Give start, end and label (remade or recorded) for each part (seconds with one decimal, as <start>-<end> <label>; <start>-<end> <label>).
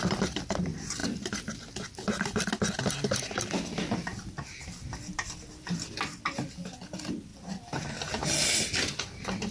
0.0-9.5 recorded